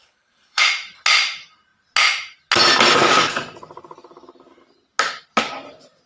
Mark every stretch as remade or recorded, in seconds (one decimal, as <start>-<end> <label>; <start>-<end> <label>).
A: 0.0-0.6 remade; 0.6-6.1 recorded

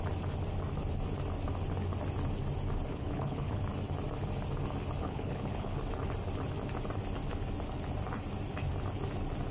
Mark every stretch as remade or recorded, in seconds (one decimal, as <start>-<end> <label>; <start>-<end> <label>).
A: 0.0-2.9 recorded; 2.9-3.6 remade; 3.6-5.0 recorded; 5.0-5.8 remade; 5.8-9.5 recorded

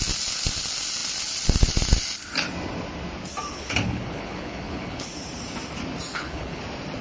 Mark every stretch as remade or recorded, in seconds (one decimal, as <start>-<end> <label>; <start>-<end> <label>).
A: 0.0-3.5 recorded; 3.5-5.1 remade; 5.1-6.1 recorded; 6.1-6.6 remade; 6.6-7.0 recorded

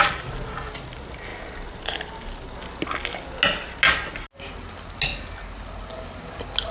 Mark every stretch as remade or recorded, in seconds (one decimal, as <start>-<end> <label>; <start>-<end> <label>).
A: 0.0-6.7 recorded

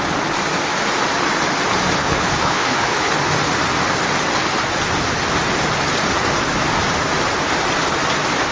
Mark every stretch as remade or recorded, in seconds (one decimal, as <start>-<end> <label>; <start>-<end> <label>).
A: 0.0-2.0 recorded; 2.0-3.1 remade; 3.1-8.5 recorded

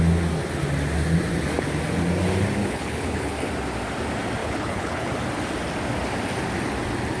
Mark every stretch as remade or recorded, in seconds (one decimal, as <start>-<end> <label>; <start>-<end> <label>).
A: 0.0-2.6 recorded; 2.6-3.5 remade; 3.5-4.4 recorded; 4.4-5.1 remade; 5.1-7.2 recorded

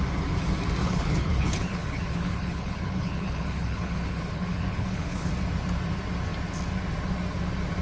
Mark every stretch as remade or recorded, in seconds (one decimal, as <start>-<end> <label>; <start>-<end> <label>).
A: 0.0-0.8 recorded; 0.8-5.3 remade; 5.3-7.8 recorded

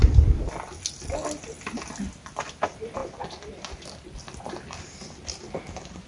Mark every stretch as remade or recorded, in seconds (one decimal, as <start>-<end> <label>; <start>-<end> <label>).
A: 0.0-6.1 recorded